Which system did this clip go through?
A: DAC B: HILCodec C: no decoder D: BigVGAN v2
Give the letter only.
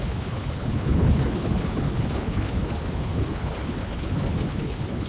B